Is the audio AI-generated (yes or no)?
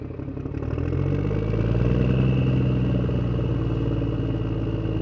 no